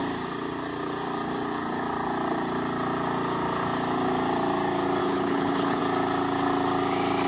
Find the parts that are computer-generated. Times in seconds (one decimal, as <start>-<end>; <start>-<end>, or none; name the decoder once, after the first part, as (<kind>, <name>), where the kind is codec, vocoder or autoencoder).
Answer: 5.0-5.8 (codec, HILCodec)

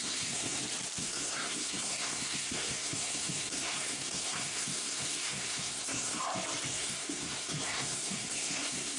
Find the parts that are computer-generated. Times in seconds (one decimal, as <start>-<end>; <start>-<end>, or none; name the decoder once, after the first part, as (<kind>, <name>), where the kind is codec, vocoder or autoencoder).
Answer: 0.0-0.6 (codec, SNAC); 1.0-6.2; 6.7-9.0